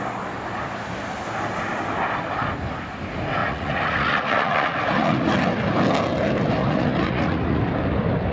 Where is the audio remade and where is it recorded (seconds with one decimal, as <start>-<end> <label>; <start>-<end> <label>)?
0.0-3.4 recorded; 3.4-5.3 remade; 5.3-6.6 recorded; 6.6-7.6 remade; 7.6-8.3 recorded